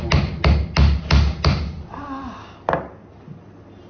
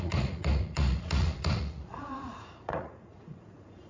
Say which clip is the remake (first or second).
second